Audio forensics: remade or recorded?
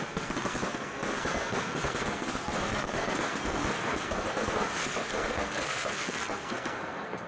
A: remade